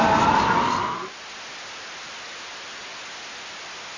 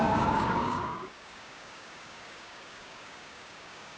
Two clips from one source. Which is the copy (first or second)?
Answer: second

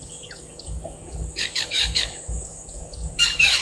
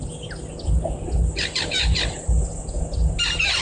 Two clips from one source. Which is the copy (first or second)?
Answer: first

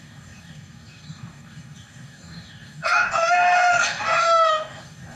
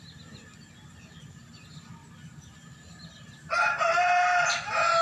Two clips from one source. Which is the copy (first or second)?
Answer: first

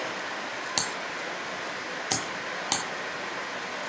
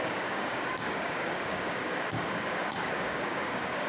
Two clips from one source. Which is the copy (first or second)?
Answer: second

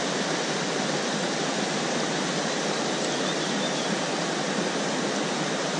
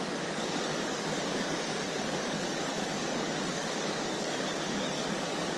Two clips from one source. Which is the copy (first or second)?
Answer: second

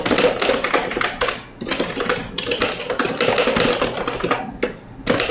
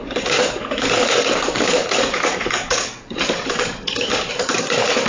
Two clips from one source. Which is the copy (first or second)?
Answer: second